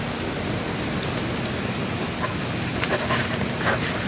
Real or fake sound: real